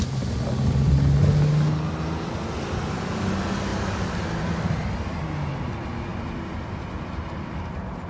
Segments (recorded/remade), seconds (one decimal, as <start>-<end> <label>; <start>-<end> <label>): 0.0-8.1 recorded